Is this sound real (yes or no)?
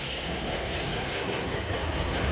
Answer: no